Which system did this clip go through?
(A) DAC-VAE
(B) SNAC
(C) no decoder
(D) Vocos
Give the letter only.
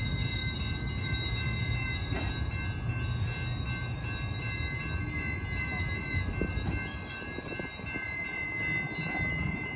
C